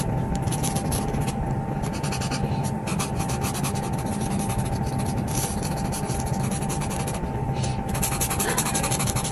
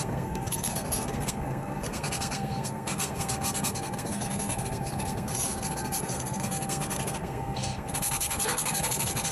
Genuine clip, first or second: first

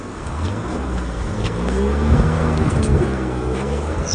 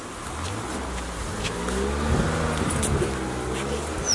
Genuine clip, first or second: second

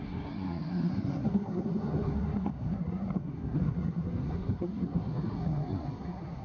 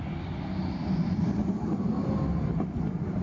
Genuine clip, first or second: second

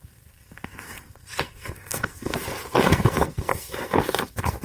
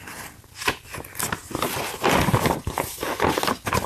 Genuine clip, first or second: second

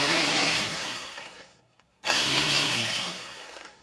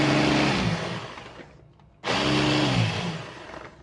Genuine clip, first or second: second